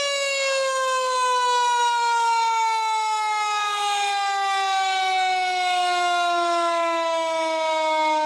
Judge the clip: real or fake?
fake